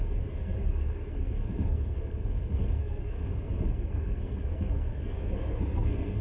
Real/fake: fake